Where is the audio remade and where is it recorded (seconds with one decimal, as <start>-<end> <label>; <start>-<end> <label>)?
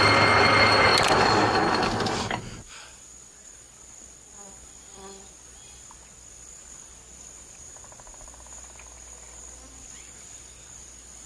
0.0-11.3 recorded